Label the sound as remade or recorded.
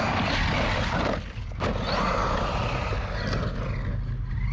recorded